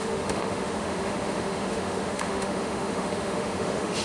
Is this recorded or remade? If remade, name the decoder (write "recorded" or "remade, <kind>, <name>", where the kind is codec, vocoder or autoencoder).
remade, autoencoder, DAC-VAE